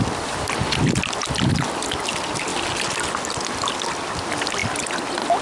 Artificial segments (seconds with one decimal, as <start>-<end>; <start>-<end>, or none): none